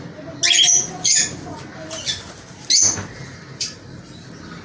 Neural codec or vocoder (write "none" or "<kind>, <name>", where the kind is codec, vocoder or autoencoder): none